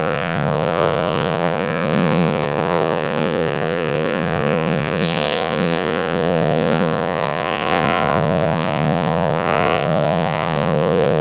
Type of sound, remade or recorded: remade